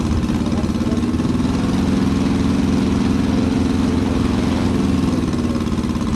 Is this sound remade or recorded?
recorded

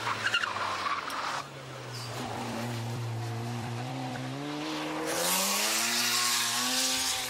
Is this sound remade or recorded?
remade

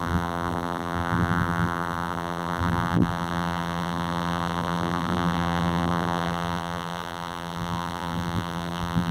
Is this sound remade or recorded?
remade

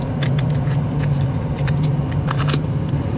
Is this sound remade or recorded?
remade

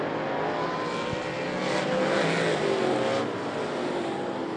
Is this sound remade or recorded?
recorded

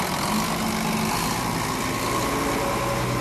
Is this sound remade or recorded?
recorded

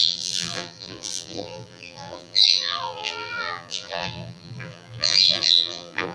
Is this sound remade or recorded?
remade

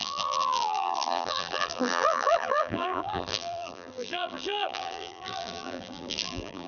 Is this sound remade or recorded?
remade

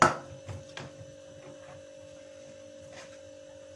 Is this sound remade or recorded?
recorded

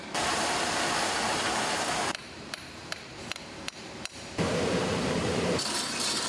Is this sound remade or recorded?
remade